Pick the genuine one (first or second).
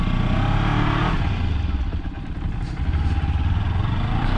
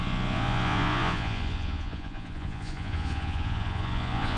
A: first